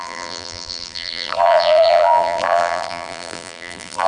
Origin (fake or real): fake